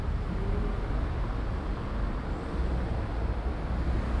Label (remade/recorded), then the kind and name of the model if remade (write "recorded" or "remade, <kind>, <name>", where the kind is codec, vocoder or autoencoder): recorded